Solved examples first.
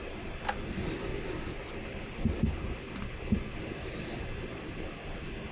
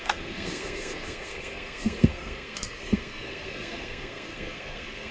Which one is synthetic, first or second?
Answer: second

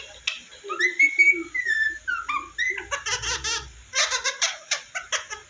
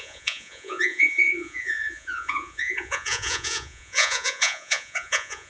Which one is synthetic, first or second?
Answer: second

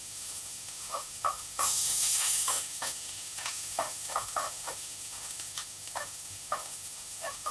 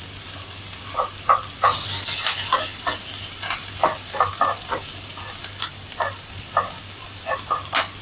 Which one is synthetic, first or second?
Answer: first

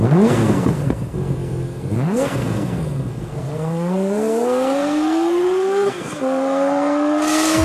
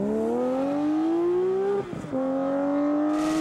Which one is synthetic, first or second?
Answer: first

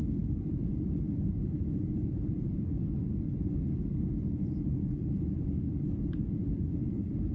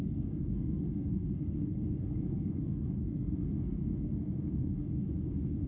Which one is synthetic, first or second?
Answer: second